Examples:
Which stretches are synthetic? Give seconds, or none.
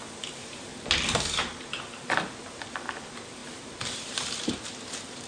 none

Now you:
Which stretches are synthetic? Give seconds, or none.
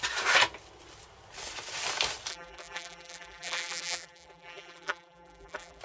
2.3-5.8 (vocoder, BigVGAN v2)